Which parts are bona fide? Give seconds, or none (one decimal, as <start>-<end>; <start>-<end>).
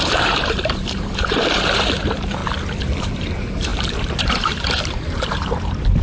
2.4-3.0; 3.7-4.2